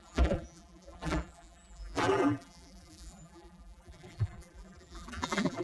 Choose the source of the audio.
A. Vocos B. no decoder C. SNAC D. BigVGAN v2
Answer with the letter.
D